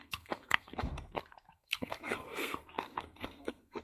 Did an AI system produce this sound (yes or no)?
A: yes